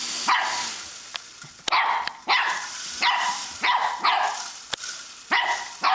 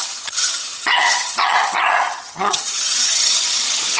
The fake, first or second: second